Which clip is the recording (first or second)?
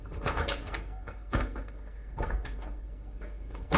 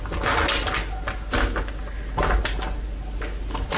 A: second